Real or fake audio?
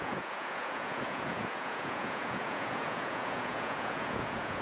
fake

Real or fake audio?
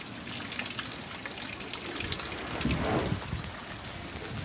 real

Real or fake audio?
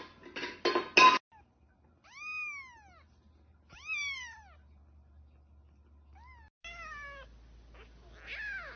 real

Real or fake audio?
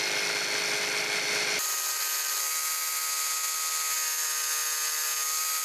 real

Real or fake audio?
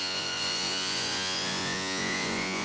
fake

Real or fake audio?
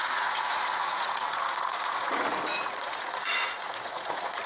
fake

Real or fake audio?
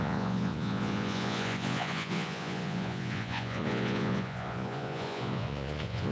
fake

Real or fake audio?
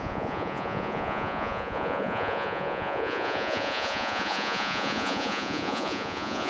fake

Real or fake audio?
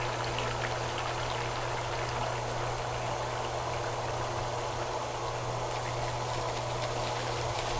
real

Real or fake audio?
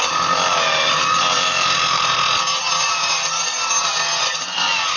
real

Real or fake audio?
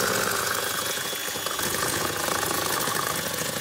fake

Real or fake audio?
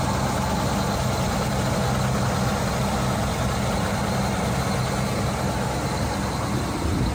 real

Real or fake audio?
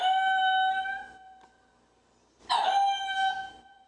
real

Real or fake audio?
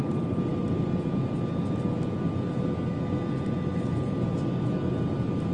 real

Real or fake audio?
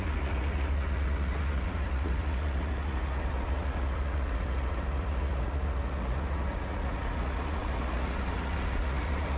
fake